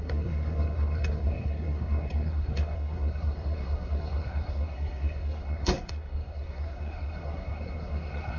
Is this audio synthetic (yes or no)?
yes